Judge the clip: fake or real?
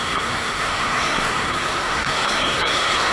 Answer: fake